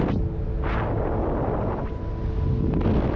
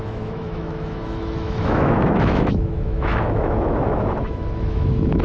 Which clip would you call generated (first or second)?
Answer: second